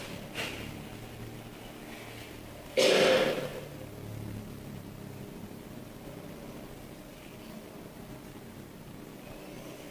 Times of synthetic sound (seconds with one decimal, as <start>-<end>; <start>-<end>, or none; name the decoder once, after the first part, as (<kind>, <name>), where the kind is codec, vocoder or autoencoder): none